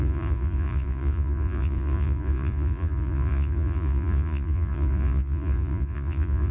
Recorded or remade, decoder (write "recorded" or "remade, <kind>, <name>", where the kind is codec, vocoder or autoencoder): remade, vocoder, Vocos